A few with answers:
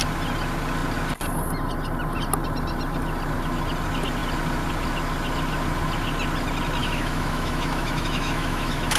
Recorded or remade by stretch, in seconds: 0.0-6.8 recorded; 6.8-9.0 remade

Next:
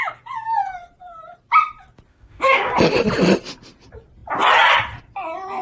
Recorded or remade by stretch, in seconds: 0.0-2.1 recorded; 2.1-2.7 remade; 2.7-5.6 recorded

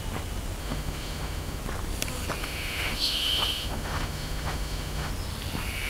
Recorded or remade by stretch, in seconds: 0.0-0.6 recorded; 0.6-1.6 remade; 1.6-2.4 recorded; 2.4-5.1 remade; 5.1-5.9 recorded